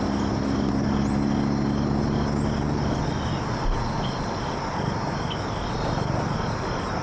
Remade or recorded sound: recorded